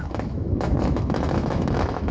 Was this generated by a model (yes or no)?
yes